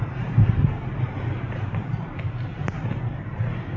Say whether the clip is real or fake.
fake